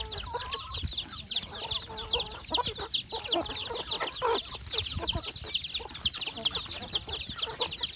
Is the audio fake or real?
real